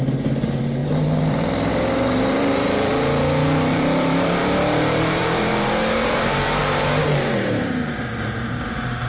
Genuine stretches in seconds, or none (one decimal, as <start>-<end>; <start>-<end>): 2.9-3.7